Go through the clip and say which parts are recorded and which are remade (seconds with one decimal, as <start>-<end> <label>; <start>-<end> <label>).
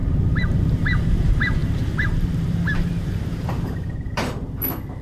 0.0-0.8 remade; 0.8-1.6 recorded; 1.6-4.6 remade; 4.6-5.0 recorded